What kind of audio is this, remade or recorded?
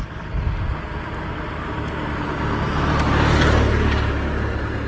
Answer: recorded